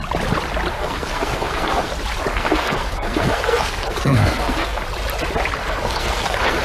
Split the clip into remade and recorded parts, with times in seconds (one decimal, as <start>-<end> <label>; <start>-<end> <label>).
0.0-0.7 recorded; 0.7-1.9 remade; 1.9-2.3 recorded; 2.3-4.8 remade; 4.8-5.6 recorded; 5.6-6.6 remade